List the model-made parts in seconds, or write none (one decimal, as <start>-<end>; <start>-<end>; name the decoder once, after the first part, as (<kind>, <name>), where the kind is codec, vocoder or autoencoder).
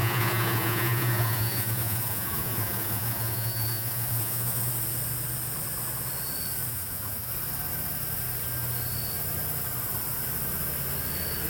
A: 0.0-4.7 (vocoder, Vocos); 6.7-7.3